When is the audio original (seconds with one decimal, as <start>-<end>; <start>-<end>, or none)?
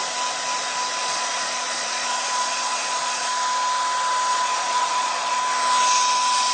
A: 0.0-1.0; 3.3-4.3; 5.4-6.5